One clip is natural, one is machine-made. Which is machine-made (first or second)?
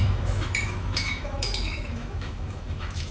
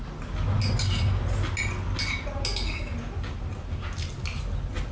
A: first